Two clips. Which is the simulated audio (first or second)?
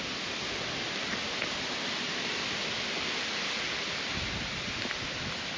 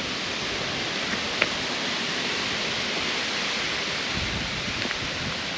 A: second